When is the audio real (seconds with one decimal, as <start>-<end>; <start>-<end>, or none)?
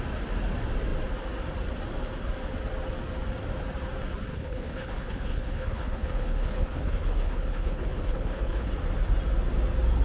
0.0-4.3; 8.7-10.0